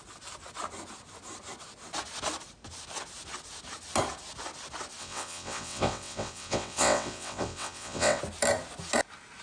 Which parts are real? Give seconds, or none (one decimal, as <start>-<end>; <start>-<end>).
0.0-5.0; 8.2-9.4